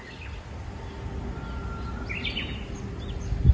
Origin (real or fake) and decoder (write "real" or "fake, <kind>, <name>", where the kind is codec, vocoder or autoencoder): real